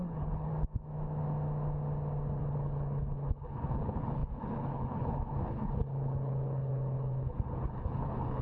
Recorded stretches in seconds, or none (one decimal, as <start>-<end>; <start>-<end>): 0.5-2.4